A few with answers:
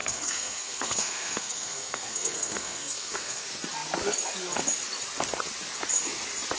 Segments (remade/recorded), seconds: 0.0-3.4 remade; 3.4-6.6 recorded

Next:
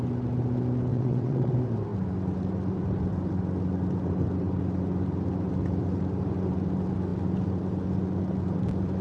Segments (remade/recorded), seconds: 0.0-0.9 recorded; 0.9-1.5 remade; 1.5-9.0 recorded